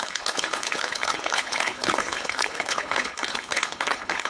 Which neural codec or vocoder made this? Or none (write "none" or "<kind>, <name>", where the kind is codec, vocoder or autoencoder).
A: codec, HILCodec